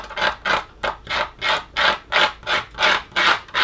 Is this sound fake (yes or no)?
no